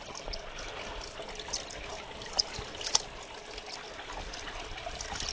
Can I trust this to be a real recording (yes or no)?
yes